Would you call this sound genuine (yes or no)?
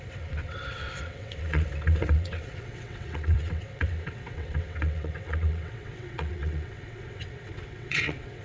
no